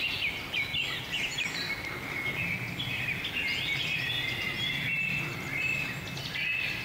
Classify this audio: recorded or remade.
recorded